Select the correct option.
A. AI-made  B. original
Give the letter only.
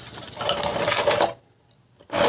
B